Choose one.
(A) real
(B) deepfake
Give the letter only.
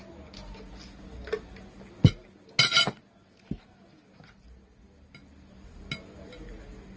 A